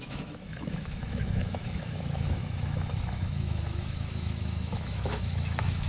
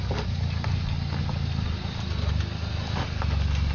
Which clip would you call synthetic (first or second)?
first